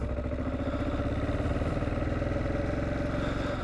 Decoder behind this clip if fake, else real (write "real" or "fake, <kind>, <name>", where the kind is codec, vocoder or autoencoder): real